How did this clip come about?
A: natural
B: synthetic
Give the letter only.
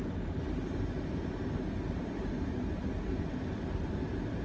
A